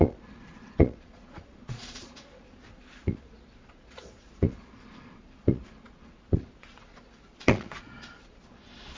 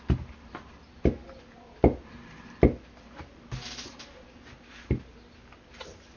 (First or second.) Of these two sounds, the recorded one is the second